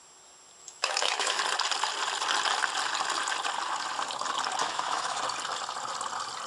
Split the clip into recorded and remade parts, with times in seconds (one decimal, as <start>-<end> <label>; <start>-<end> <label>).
0.0-0.6 recorded; 0.6-1.4 remade; 1.4-4.6 recorded; 4.6-5.2 remade; 5.2-6.5 recorded